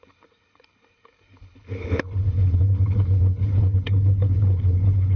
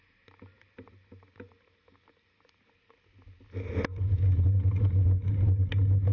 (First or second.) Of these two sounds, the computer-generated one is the first